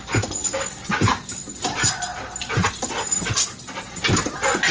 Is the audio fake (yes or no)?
no